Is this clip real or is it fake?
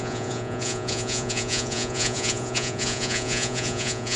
fake